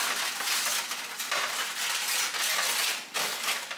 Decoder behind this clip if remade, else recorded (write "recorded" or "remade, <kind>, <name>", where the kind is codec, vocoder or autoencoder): recorded